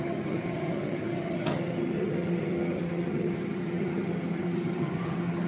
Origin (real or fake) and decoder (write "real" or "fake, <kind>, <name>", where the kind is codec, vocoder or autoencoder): fake, vocoder, HiFi-GAN